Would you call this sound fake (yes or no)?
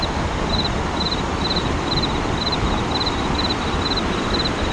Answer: no